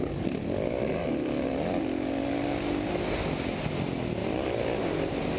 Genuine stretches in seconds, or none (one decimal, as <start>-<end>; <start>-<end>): 0.0-5.4